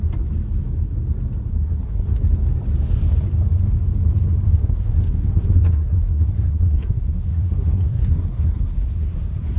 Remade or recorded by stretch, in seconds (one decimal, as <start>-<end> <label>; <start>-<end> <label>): 0.0-1.5 recorded; 1.5-2.2 remade; 2.2-4.6 recorded; 4.6-9.6 remade

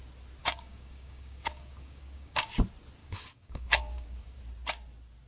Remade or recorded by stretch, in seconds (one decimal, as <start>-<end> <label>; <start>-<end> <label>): 0.0-0.4 recorded; 0.4-2.5 remade; 2.5-3.0 recorded; 3.0-4.4 remade; 4.4-5.3 recorded

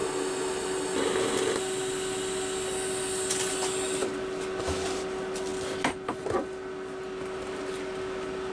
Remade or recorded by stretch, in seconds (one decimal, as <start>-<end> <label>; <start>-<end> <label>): 0.0-8.5 recorded

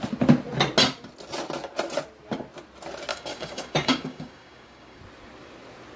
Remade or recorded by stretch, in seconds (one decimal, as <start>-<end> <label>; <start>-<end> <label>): 0.0-3.1 recorded; 3.1-5.0 remade; 5.0-6.0 recorded

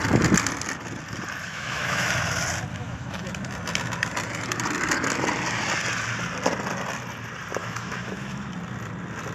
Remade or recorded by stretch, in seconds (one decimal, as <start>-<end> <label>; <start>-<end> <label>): 0.0-1.4 recorded; 1.4-2.1 remade; 2.1-2.7 recorded; 2.7-3.3 remade; 3.3-7.6 recorded; 7.6-8.5 remade; 8.5-9.3 recorded

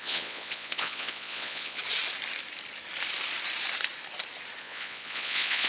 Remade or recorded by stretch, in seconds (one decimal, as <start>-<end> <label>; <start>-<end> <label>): 0.0-1.8 remade; 1.8-4.6 recorded; 4.6-5.7 remade